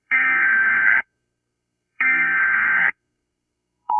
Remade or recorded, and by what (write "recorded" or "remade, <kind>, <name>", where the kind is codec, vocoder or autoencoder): remade, codec, SNAC